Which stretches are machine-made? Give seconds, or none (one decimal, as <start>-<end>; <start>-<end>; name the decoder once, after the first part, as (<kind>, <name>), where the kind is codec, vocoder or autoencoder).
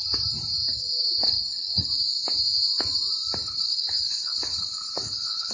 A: 1.2-1.9 (codec, HILCodec); 3.4-5.5